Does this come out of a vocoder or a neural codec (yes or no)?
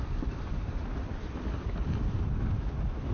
no